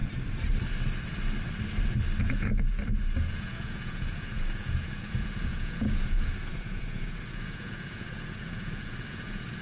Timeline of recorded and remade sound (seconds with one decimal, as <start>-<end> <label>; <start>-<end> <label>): 0.0-2.2 recorded; 2.2-2.8 remade; 2.8-3.3 recorded; 3.3-9.6 remade